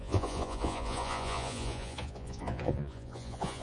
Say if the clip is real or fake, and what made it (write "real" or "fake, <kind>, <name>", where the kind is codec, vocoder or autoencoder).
fake, vocoder, Vocos